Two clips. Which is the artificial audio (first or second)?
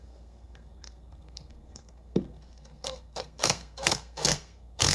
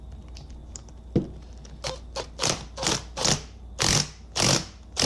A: first